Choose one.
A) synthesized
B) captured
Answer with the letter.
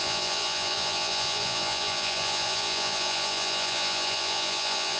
A